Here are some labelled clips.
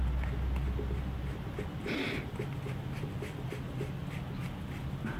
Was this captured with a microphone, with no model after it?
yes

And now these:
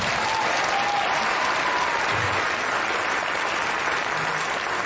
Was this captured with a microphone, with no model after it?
yes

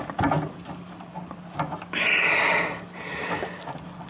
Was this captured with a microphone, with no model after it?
yes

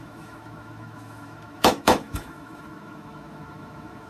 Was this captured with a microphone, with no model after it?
no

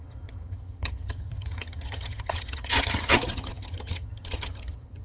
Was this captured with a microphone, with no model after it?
no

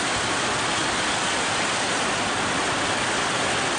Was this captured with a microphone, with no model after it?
yes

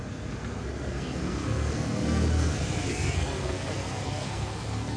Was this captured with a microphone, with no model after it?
no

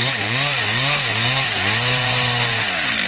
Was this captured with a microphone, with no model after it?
no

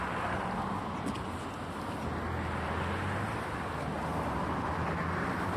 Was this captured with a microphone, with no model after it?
yes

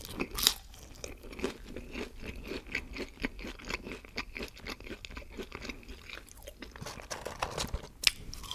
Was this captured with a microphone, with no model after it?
yes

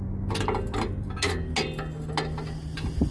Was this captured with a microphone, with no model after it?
yes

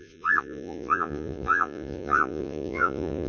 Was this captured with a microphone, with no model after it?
no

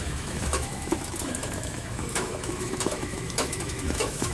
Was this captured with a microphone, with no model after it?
no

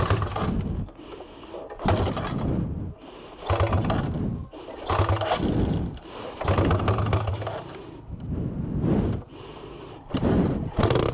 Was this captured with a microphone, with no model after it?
yes